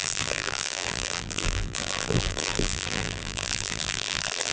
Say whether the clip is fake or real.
fake